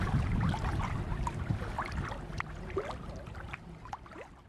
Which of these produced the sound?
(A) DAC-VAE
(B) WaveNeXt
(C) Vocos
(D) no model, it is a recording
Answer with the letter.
D